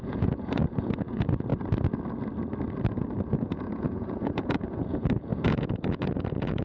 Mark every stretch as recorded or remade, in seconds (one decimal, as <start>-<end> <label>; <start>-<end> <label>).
0.0-1.5 remade; 1.5-2.9 recorded; 2.9-6.6 remade